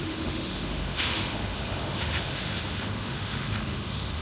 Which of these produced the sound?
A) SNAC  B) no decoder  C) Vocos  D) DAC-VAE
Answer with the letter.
D